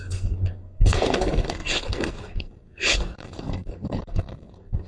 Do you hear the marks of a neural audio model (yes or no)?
yes